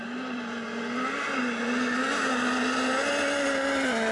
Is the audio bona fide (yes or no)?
yes